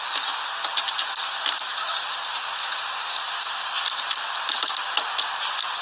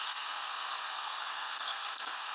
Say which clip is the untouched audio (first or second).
first